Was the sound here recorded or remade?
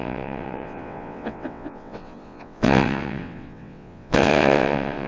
remade